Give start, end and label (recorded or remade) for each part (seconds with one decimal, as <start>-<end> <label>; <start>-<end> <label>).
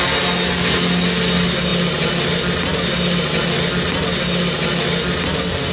0.0-5.7 recorded